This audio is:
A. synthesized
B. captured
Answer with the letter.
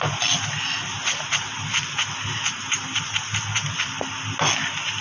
B